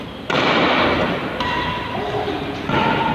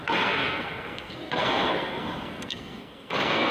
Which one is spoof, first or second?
second